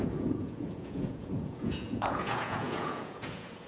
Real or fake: fake